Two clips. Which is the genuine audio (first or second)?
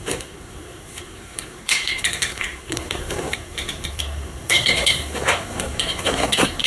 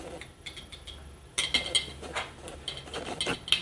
second